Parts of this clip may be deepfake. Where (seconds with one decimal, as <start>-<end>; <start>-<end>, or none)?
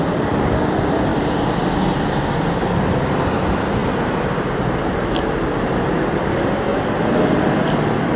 0.0-8.2